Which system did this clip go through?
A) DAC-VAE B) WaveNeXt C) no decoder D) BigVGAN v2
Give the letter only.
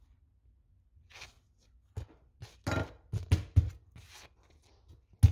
C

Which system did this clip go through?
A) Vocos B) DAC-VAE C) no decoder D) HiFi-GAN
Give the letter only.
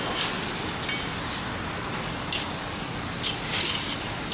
C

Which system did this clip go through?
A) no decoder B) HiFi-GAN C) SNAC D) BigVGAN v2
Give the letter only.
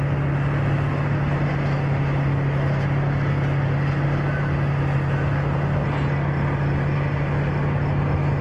A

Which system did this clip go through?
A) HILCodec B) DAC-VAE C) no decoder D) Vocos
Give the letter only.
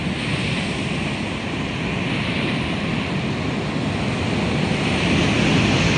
C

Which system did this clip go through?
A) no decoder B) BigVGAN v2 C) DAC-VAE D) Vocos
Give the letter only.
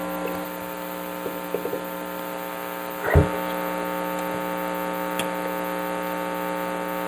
A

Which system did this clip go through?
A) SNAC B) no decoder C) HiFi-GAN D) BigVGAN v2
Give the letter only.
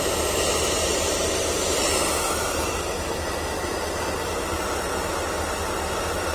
B